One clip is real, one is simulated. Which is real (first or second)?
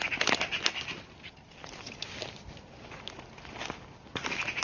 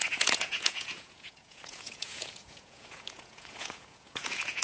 first